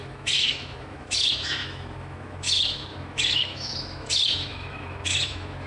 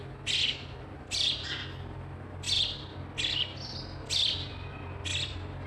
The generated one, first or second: first